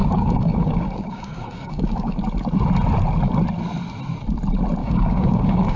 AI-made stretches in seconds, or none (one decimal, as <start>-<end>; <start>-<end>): 0.0-2.2; 4.8-5.8